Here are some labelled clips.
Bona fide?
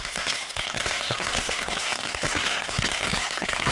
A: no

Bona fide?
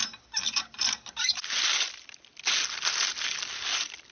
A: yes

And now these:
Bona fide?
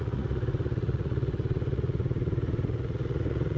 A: no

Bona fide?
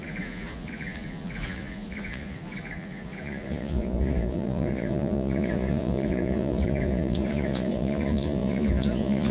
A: no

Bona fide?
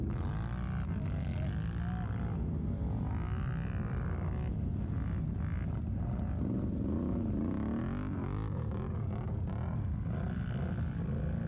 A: yes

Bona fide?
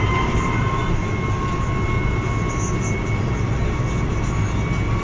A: yes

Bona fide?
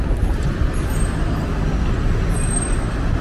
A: yes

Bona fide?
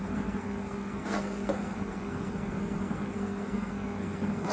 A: no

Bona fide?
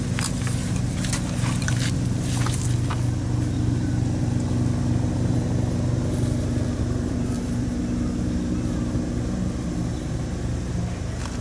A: yes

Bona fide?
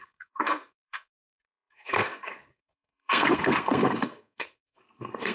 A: no